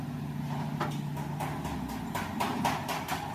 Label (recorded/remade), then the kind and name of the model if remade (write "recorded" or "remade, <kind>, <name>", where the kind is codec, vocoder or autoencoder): recorded